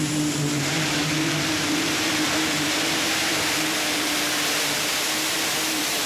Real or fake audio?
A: fake